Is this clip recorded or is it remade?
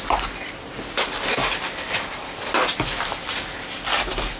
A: recorded